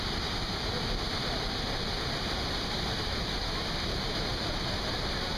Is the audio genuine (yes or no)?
yes